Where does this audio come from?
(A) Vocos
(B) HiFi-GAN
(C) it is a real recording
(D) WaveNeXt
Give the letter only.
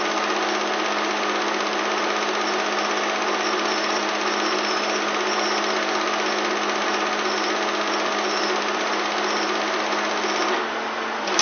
C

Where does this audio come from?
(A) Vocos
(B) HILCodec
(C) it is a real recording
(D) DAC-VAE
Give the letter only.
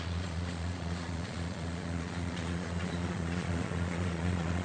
A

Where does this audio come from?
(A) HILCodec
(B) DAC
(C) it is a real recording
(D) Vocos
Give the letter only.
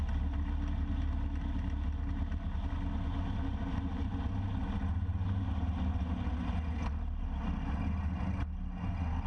C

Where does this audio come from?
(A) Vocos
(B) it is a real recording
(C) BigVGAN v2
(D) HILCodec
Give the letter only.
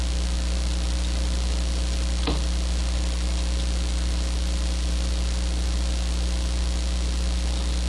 B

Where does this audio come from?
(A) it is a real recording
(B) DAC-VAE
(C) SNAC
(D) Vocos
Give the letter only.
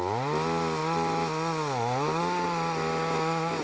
A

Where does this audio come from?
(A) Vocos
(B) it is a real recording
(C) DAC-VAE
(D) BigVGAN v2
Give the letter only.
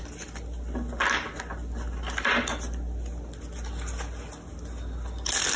B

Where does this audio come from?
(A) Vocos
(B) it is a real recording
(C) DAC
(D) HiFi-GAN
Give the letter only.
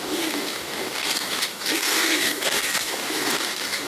C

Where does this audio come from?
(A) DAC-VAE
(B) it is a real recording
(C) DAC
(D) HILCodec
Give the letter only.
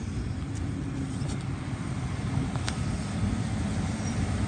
B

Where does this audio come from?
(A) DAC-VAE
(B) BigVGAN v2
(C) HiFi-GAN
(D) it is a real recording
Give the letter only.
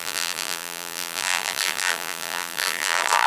B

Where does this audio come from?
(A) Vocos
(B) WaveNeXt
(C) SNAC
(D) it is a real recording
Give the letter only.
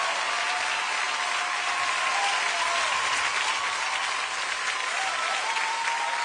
D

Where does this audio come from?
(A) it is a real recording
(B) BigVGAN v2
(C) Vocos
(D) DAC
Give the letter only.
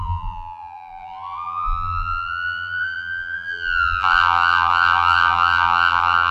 B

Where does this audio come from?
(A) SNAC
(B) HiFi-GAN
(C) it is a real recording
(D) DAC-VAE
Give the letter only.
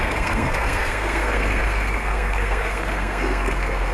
A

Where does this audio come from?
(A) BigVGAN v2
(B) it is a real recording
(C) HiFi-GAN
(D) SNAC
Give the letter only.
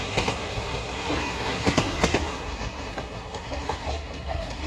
D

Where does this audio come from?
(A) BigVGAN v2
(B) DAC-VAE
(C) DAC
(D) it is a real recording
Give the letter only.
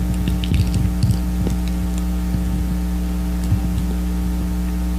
D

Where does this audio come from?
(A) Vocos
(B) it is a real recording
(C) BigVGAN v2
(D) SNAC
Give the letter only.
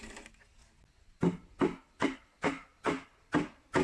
B